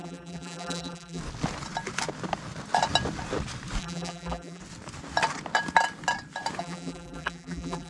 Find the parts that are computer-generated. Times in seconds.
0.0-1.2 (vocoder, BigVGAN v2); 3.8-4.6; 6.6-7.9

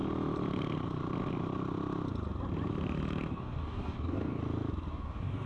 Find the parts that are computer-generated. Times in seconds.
3.3-4.4 (codec, DAC); 4.9-5.5

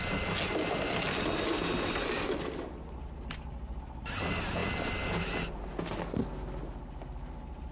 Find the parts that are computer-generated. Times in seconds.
none

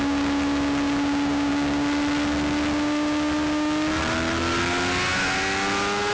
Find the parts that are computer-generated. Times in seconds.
none